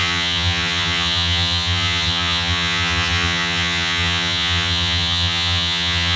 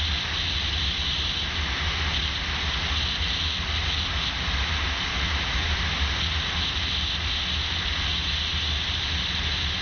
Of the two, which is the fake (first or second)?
first